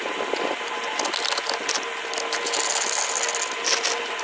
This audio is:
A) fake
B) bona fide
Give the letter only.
B